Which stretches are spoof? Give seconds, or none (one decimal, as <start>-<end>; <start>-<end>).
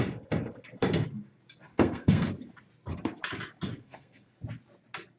1.7-2.3; 3.7-4.4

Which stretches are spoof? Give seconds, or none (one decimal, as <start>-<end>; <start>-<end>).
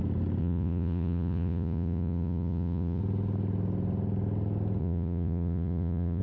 0.4-3.0; 4.8-6.2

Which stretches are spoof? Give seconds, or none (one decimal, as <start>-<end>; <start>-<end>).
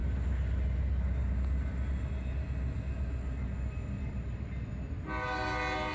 none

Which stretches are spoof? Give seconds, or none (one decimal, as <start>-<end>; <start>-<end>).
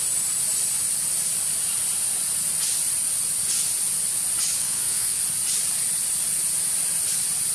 4.6-5.2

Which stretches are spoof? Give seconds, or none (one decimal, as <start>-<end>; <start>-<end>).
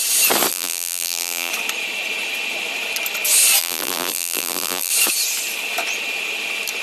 0.5-1.5; 3.6-4.9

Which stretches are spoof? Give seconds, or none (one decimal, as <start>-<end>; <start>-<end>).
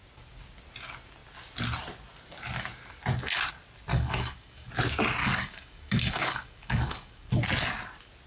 3.9-4.7; 5.2-7.3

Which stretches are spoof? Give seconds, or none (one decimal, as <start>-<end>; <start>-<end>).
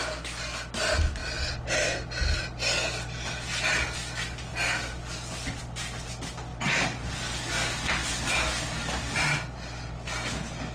6.5-7.1